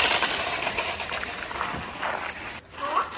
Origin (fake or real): real